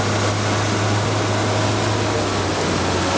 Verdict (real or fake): real